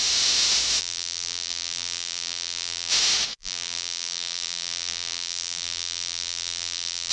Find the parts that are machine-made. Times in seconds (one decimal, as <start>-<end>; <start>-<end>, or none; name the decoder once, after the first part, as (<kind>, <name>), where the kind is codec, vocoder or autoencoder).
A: 0.8-2.9 (vocoder, BigVGAN v2); 3.4-7.1